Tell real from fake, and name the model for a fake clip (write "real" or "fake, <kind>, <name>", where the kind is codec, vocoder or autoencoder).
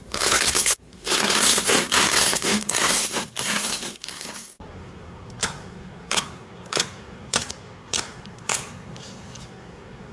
fake, codec, SNAC